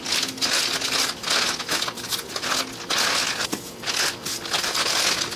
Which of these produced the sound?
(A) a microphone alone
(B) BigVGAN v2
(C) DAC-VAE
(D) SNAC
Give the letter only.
A